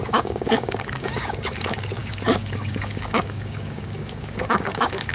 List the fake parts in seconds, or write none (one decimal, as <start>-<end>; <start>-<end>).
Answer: 0.0-5.1